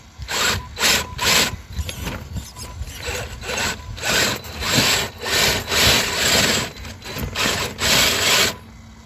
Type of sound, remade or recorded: recorded